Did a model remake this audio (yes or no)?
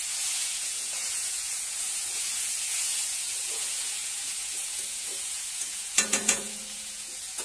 yes